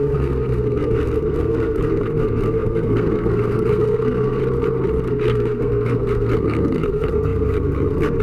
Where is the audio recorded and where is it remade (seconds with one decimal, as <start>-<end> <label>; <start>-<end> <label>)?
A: 0.0-4.4 remade; 4.4-5.1 recorded; 5.1-8.2 remade